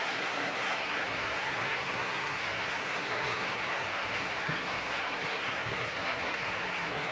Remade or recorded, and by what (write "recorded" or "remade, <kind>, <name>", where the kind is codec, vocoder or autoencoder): remade, codec, SNAC